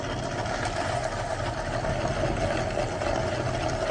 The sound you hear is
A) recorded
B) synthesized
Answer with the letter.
A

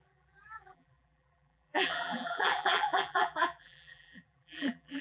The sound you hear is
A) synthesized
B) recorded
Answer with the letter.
A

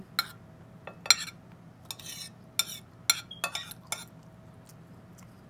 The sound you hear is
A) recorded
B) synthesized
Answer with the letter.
A